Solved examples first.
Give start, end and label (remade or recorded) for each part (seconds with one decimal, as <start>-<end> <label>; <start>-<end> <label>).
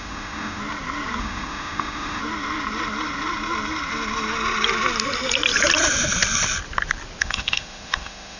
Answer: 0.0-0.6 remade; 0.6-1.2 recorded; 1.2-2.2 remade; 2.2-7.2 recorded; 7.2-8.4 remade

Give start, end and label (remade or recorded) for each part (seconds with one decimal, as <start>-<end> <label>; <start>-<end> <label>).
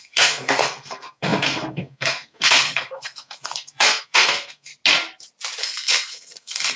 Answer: 0.0-4.7 remade; 4.7-5.6 recorded; 5.6-6.8 remade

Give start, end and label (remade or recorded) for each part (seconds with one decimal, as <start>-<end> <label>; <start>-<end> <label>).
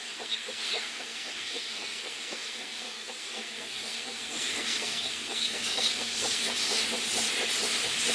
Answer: 0.0-6.8 remade; 6.8-8.1 recorded